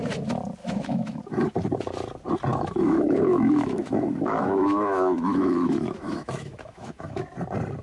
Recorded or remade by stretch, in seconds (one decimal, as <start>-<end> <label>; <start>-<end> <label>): 0.0-0.6 recorded; 0.6-1.2 remade; 1.2-2.5 recorded; 2.5-7.2 remade; 7.2-7.8 recorded